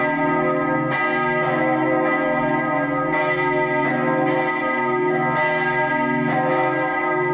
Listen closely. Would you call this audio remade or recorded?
recorded